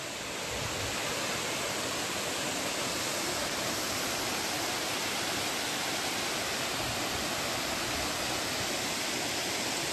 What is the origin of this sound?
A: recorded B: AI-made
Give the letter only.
A